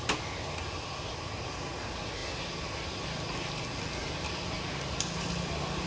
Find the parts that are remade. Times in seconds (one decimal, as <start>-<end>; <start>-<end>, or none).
none